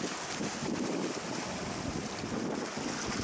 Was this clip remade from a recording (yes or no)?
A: yes